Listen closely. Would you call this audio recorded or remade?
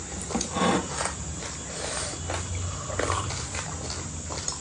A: recorded